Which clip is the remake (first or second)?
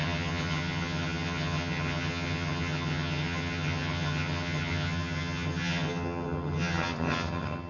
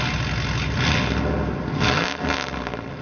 first